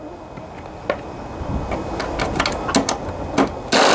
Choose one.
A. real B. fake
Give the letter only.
A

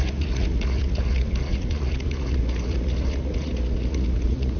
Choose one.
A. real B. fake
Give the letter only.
B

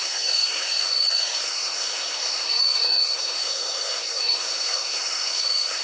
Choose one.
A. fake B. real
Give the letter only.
A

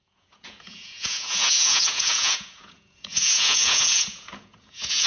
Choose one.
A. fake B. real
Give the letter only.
A